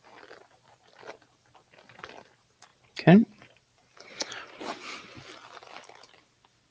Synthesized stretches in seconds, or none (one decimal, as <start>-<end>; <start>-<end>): 2.7-4.6